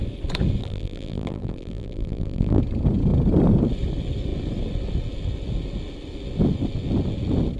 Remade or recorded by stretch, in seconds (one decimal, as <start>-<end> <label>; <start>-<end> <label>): 0.0-0.6 recorded; 0.6-2.6 remade; 2.6-7.6 recorded